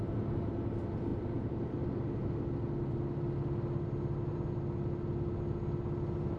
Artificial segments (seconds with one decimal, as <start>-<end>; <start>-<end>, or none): 1.1-1.9